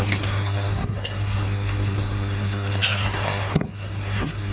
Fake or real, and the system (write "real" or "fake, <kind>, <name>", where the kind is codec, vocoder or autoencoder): fake, codec, SNAC